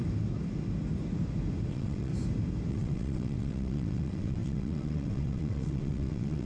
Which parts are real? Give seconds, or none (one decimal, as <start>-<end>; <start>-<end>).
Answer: 0.0-1.7; 2.1-2.7